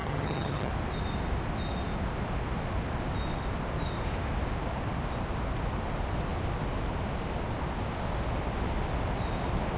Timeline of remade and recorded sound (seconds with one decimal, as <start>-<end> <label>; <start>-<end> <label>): 0.0-0.7 remade; 0.7-9.8 recorded